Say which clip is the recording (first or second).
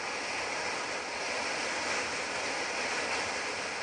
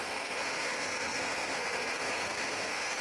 first